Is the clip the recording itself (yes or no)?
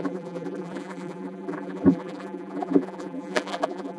no